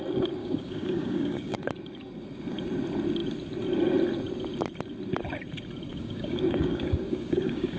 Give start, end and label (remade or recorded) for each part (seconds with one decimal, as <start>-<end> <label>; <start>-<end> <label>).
0.0-0.4 recorded; 0.4-1.6 remade; 1.6-5.9 recorded; 5.9-7.8 remade